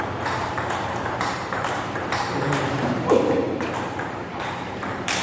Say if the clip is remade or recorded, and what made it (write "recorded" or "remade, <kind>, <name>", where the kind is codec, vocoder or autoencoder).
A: remade, vocoder, BigVGAN v2